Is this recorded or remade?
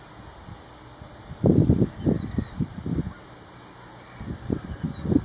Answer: recorded